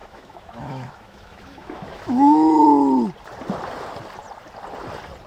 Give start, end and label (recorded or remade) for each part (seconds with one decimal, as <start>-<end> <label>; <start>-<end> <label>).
0.0-2.5 remade; 2.5-5.3 recorded